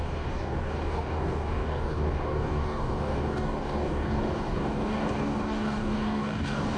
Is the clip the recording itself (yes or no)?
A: no